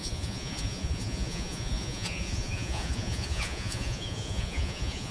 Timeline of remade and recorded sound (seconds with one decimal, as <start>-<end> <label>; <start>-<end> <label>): 0.0-5.1 remade